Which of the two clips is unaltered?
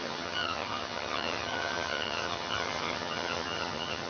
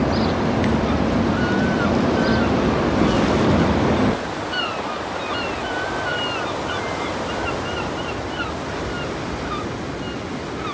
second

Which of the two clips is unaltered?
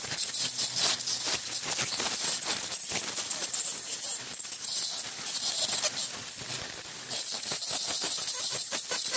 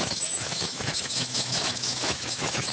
first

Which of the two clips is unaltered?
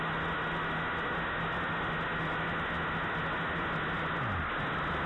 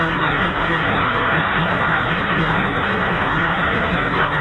first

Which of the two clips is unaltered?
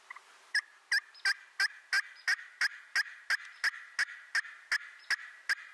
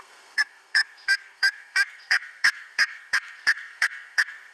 first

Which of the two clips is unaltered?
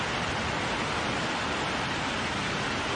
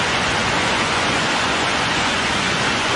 first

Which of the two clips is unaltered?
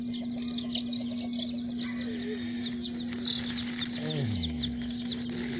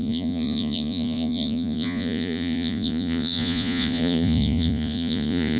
first